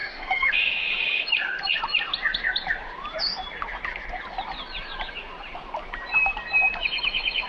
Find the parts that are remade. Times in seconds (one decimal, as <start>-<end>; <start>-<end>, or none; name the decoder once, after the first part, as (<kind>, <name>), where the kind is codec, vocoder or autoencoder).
0.0-0.5 (autoencoder, DAC-VAE)

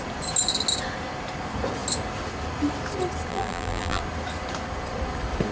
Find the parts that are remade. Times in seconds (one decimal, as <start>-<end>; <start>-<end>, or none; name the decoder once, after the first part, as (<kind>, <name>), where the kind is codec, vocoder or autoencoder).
3.3-4.0 (vocoder, BigVGAN v2)

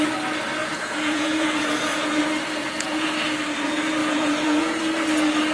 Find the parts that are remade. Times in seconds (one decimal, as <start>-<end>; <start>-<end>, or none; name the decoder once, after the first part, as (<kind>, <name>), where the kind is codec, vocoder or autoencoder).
0.6-2.2 (vocoder, Vocos); 2.6-3.1; 4.0-4.8

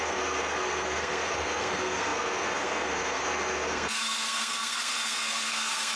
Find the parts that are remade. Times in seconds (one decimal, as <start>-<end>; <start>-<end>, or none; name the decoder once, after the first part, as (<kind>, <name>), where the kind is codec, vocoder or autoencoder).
0.0-6.0 (codec, SNAC)

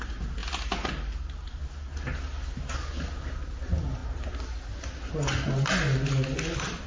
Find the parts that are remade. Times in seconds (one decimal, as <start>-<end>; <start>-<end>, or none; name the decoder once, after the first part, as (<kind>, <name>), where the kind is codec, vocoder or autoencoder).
4.0-5.1 (vocoder, BigVGAN v2)

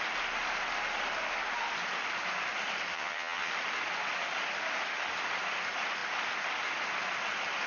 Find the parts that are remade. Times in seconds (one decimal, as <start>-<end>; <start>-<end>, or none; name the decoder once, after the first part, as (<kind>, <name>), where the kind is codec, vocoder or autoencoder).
2.9-3.5 (vocoder, HiFi-GAN)

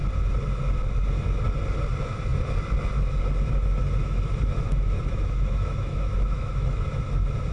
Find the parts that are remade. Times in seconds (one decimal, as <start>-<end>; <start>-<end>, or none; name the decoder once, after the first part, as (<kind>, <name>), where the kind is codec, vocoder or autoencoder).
4.0-7.0 (autoencoder, DAC-VAE)

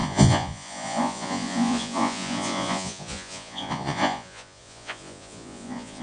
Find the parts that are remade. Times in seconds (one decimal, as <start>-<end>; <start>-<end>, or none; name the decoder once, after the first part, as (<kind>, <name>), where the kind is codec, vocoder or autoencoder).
0.0-6.0 (vocoder, Vocos)